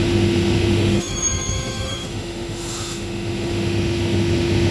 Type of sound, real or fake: fake